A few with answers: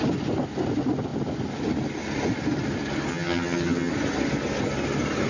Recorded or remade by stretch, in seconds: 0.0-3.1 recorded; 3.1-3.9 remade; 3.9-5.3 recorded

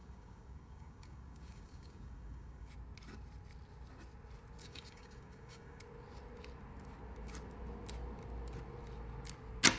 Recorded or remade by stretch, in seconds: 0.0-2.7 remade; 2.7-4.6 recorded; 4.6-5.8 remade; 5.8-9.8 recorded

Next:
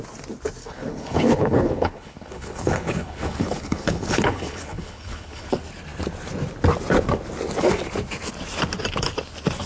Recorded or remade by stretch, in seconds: 0.0-0.6 recorded; 0.6-5.5 remade; 5.5-9.7 recorded